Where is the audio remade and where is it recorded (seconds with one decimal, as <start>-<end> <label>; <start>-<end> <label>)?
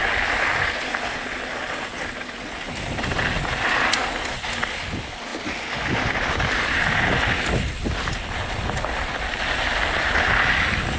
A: 0.0-11.0 recorded